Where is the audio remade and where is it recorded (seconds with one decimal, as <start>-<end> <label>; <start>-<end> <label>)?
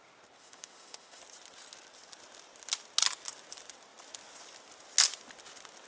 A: 0.0-0.4 recorded; 0.4-1.2 remade; 1.2-5.9 recorded